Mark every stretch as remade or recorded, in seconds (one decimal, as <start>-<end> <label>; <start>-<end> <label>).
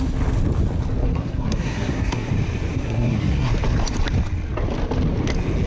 0.0-1.0 recorded; 1.0-2.3 remade; 2.3-2.7 recorded; 2.7-3.5 remade; 3.5-5.7 recorded